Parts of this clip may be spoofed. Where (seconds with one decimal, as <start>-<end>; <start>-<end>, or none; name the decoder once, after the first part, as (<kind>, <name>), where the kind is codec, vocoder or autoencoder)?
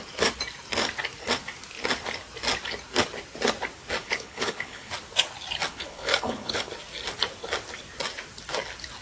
4.0-4.9 (codec, HILCodec); 5.7-6.7